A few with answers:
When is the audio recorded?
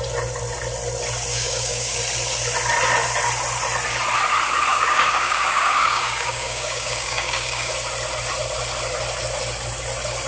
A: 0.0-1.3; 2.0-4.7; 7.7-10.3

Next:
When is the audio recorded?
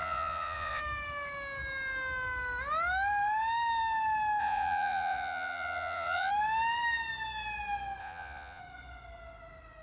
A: 0.8-4.4; 6.3-8.0; 8.6-9.8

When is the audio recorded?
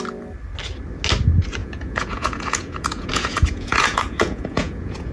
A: 0.0-1.6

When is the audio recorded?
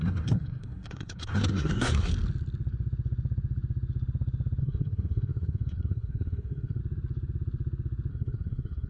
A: 2.1-4.6; 6.8-8.1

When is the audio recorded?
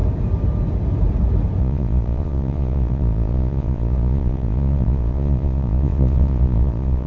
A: 0.0-1.6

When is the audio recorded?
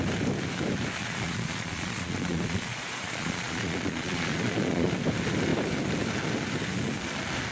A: 0.0-1.0; 4.9-7.5